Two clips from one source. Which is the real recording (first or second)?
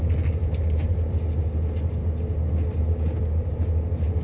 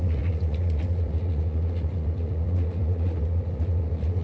first